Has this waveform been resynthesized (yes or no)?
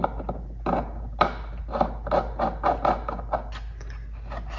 no